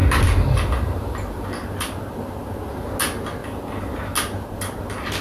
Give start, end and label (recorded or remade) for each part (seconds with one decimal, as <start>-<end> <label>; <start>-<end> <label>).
0.0-0.5 remade; 0.5-1.0 recorded; 1.0-2.0 remade; 2.0-5.2 recorded